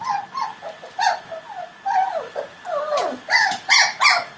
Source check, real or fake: real